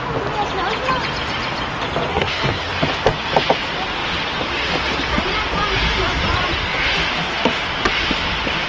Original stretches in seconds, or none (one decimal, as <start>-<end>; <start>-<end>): 0.0-2.1; 2.7-8.7